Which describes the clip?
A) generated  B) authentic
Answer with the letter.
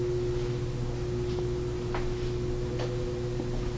B